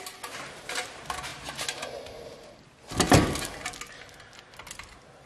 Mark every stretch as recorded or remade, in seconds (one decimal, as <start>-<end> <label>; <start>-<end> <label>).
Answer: 0.0-5.3 recorded